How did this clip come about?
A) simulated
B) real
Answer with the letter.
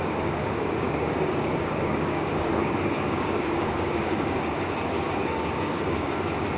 A